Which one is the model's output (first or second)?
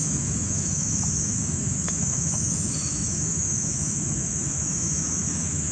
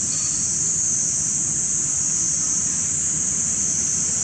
first